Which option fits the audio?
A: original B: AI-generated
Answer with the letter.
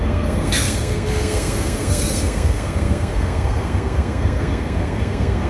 B